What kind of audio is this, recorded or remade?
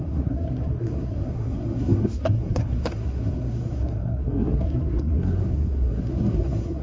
remade